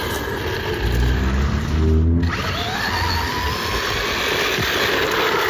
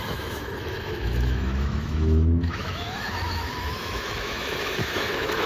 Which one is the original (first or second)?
first